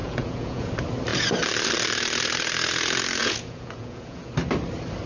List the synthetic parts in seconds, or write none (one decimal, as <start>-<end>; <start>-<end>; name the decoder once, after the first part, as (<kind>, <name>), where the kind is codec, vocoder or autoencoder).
0.0-0.7 (vocoder, Vocos); 3.2-4.3